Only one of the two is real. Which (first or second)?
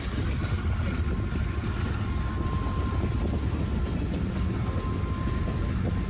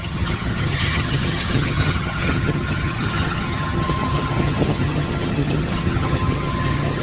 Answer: first